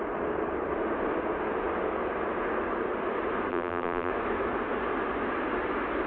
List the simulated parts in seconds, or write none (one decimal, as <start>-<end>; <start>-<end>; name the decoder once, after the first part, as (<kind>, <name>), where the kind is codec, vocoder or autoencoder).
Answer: 3.5-4.1 (vocoder, BigVGAN v2)